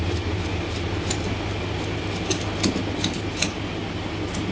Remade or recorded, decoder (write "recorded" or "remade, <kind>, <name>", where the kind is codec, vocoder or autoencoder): recorded